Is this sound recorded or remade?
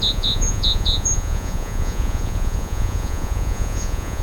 remade